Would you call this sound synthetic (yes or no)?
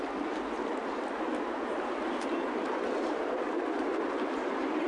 no